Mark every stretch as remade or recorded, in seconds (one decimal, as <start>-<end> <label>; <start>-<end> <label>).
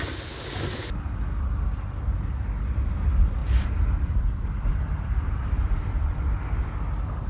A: 0.0-7.3 recorded